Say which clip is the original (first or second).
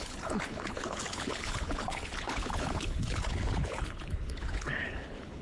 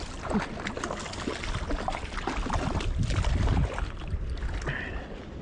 second